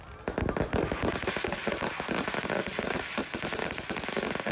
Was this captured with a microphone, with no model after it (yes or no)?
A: yes